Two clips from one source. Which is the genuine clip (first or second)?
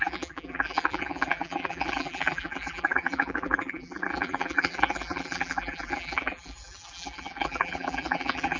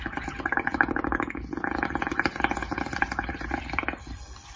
second